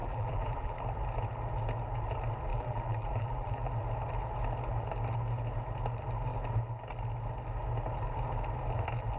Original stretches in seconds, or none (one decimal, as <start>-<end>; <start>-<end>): 0.7-2.5; 3.7-9.2